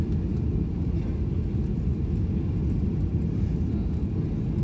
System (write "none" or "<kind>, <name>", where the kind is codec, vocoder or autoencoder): none